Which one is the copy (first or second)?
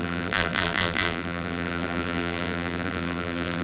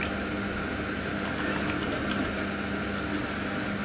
first